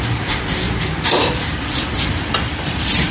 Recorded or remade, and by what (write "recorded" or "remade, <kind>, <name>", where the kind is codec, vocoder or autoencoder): remade, vocoder, BigVGAN v2